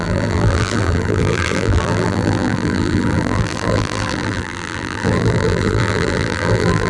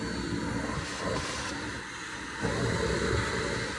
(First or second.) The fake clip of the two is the first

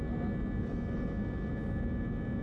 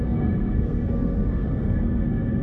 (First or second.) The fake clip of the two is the second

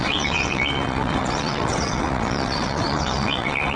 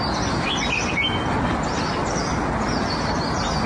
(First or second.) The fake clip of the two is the first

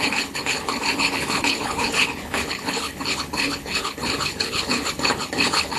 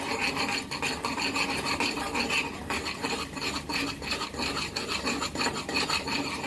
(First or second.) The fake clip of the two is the first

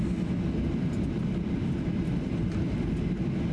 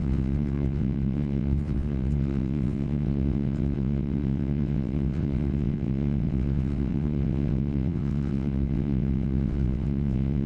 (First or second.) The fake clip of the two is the second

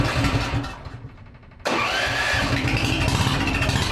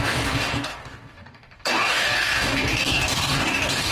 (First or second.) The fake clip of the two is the second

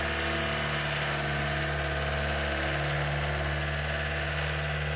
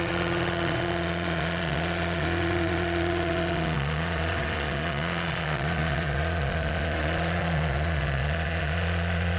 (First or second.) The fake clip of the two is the second